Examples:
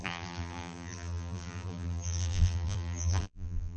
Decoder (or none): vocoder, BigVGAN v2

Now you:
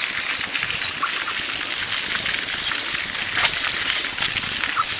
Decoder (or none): none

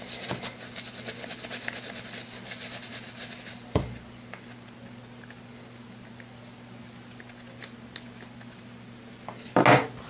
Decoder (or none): none